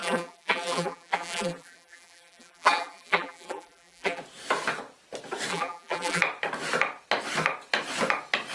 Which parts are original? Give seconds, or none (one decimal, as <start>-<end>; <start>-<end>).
4.2-5.5; 6.2-8.5

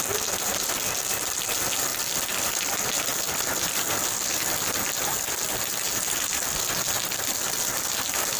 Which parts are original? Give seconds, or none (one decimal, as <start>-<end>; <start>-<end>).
0.0-8.4

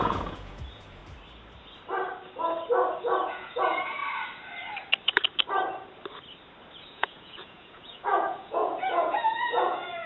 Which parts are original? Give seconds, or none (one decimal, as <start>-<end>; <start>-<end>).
1.0-3.0; 4.0-6.8